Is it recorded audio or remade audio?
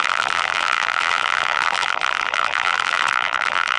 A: remade